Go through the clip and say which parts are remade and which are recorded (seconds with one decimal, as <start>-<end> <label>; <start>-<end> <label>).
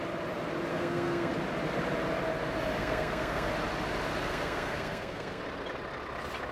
0.0-0.7 recorded; 0.7-1.3 remade; 1.3-2.8 recorded; 2.8-3.5 remade; 3.5-4.3 recorded; 4.3-5.4 remade; 5.4-6.5 recorded